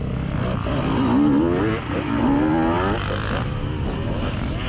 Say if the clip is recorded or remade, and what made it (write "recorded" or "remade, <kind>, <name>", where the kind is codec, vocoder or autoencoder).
recorded